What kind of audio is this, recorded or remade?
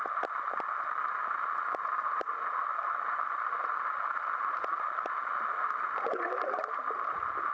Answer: recorded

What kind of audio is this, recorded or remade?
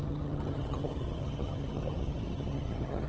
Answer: remade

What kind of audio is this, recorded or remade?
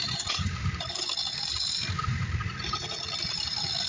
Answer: recorded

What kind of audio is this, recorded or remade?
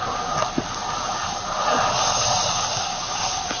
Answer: recorded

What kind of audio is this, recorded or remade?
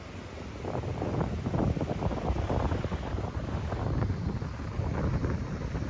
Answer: recorded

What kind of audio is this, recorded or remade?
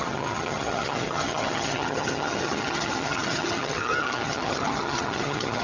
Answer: remade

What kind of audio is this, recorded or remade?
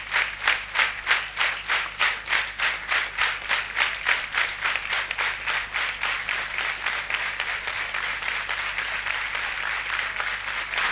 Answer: recorded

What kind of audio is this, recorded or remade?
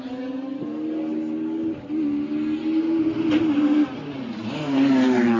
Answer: recorded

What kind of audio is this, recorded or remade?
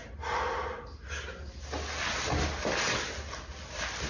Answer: recorded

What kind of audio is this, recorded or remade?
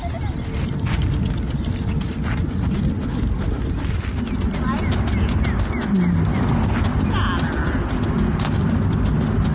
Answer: recorded